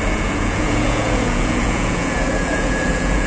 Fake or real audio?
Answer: fake